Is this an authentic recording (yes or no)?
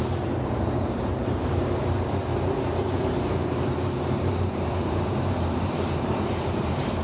no